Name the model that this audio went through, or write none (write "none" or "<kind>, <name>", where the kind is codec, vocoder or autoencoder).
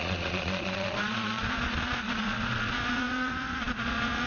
vocoder, Vocos